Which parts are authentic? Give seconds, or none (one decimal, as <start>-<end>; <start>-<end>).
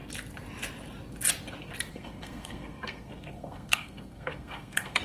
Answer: 0.0-1.9